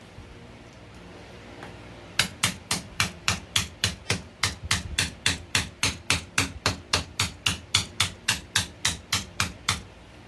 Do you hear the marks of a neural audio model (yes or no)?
yes